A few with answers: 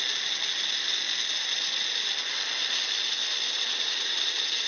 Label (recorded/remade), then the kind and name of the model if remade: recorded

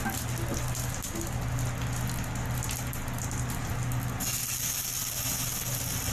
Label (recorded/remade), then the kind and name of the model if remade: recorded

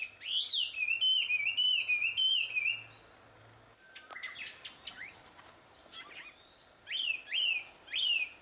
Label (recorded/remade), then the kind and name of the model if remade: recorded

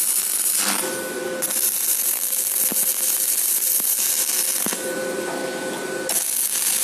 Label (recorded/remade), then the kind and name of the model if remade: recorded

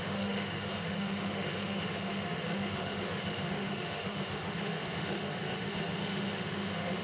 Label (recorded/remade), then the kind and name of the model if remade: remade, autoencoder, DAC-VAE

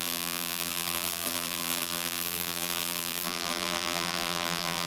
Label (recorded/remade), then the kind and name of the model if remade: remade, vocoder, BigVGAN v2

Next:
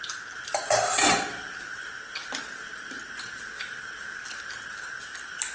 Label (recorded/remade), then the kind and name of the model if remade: recorded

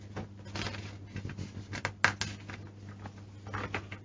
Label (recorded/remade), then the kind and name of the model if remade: recorded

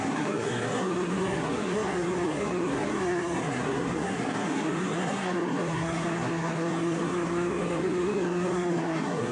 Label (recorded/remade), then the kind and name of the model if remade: remade, codec, SNAC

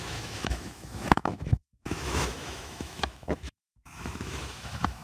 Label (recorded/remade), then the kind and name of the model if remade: remade, autoencoder, DAC-VAE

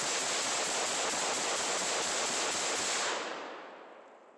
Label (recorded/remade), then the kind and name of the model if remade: recorded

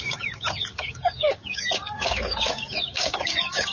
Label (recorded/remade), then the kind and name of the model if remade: remade, codec, DAC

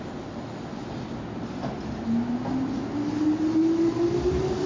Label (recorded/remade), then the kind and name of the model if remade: recorded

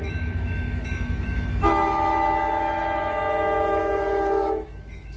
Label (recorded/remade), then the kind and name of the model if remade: remade, autoencoder, DAC-VAE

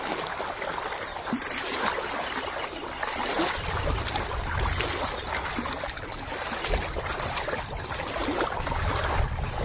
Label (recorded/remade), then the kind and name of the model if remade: remade, vocoder, BigVGAN v2